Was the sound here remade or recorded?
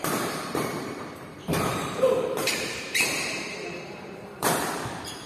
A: remade